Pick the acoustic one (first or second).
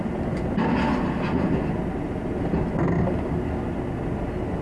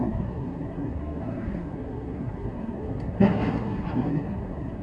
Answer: first